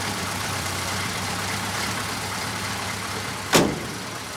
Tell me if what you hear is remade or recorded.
remade